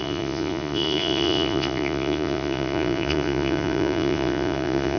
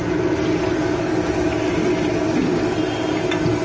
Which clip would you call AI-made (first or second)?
first